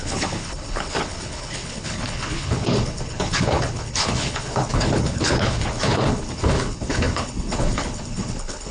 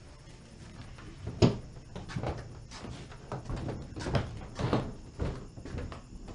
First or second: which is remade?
first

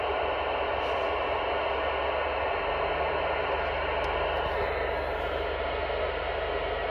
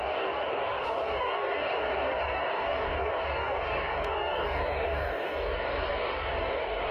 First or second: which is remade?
second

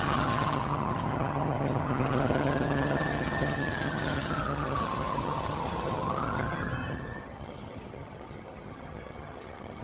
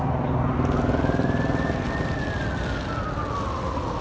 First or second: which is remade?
first